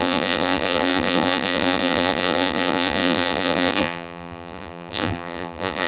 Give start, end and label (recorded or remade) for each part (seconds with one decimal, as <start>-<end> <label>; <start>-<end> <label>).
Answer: 0.0-5.9 remade